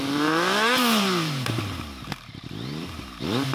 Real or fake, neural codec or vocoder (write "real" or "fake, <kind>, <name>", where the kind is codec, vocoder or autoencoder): fake, vocoder, BigVGAN v2